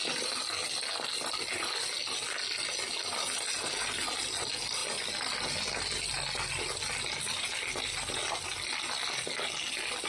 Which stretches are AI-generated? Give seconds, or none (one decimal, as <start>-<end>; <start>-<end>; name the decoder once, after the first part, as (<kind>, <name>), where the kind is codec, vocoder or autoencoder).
none